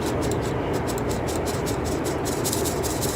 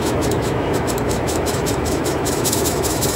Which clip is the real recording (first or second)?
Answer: first